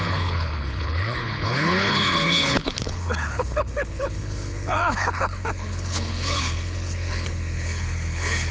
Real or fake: fake